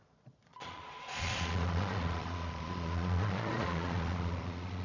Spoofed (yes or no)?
yes